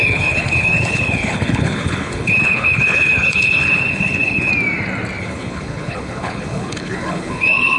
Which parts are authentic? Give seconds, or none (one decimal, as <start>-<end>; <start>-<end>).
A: 4.5-5.2